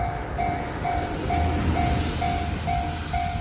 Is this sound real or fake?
real